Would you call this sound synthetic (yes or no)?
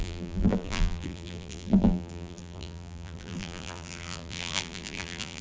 yes